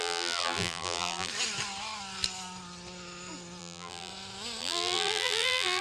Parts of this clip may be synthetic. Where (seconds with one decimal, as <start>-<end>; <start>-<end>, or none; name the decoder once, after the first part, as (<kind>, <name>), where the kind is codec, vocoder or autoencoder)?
0.0-1.3 (vocoder, BigVGAN v2); 3.6-4.1; 4.6-5.8